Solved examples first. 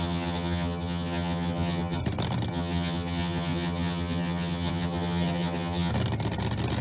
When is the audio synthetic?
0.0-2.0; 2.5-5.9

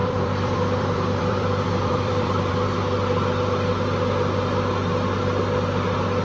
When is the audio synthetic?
0.0-2.5

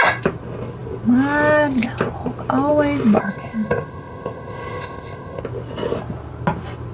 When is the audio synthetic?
3.2-5.4

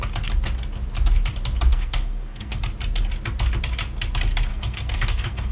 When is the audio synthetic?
1.7-2.6; 4.5-5.5

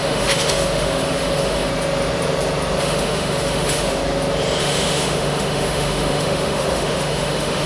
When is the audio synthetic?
0.0-1.7; 2.8-4.0; 4.6-7.7

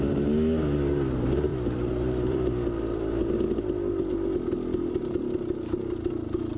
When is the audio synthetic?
1.5-3.2

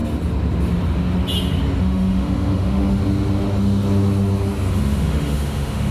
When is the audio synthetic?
1.8-3.0; 4.7-5.9

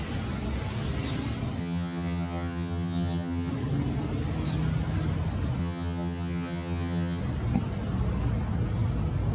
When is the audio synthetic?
1.6-3.5; 5.6-7.2